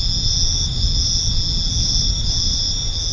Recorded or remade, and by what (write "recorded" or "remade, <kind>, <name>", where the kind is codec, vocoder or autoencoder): recorded